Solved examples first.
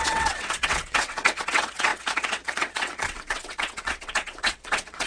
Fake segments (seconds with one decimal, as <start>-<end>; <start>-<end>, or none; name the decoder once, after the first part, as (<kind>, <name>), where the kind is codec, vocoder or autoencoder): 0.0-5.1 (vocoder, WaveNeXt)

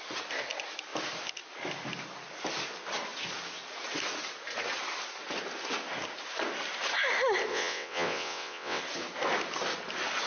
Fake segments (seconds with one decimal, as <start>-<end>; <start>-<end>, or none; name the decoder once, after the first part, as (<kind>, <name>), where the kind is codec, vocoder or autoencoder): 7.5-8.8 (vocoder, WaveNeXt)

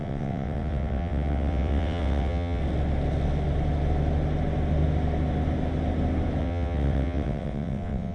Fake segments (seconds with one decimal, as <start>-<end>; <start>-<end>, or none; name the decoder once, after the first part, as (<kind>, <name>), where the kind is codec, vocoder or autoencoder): 0.0-2.6 (vocoder, WaveNeXt); 6.4-8.1